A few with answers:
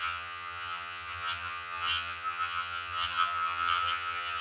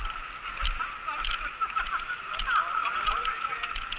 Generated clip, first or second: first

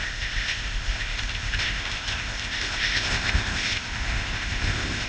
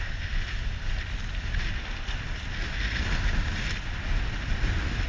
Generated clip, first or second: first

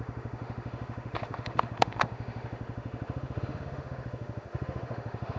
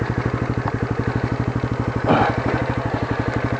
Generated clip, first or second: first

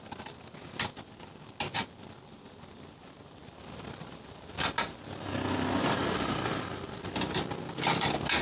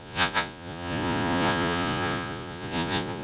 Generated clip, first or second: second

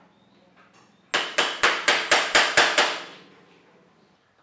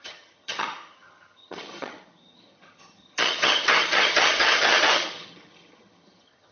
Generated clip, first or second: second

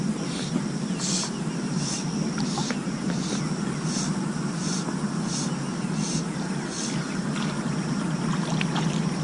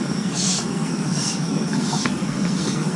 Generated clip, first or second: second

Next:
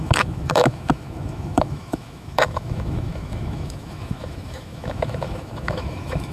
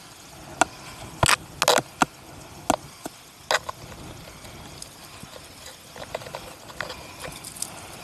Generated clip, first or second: first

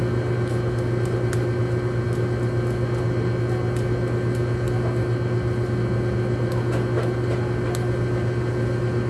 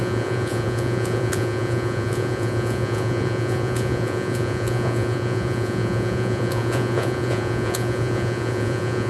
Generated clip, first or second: second